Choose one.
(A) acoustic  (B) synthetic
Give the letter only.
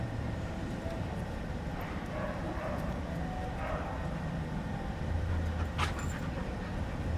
B